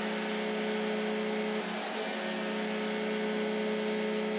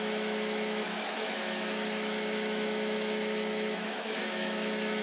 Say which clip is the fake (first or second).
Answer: second